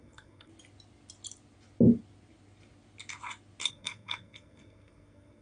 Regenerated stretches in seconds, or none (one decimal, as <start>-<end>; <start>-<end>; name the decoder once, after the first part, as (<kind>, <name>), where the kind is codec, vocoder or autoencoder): 0.0-0.5 (codec, SNAC); 3.7-5.4